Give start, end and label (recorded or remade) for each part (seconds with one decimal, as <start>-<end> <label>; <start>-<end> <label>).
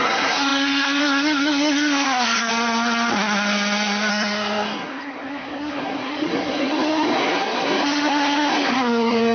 0.0-2.5 remade; 2.5-4.1 recorded; 4.1-9.3 remade